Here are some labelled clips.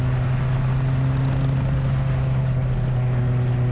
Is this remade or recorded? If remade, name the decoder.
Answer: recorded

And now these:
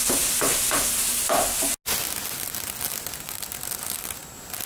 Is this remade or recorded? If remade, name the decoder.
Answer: recorded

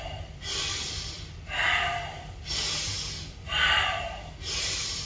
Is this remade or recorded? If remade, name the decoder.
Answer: recorded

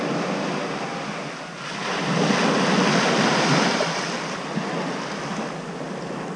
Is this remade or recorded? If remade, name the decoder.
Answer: recorded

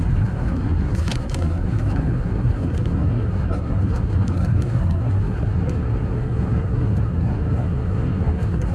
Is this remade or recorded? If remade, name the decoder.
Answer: remade, codec, SNAC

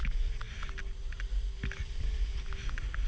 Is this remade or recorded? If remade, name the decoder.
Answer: recorded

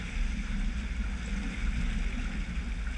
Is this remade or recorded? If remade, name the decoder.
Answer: recorded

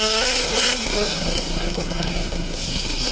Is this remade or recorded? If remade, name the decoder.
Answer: remade, codec, SNAC